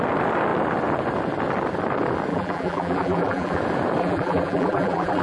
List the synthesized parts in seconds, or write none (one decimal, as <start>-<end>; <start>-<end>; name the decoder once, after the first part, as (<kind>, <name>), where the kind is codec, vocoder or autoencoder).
2.3-3.6 (vocoder, BigVGAN v2); 4.0-5.2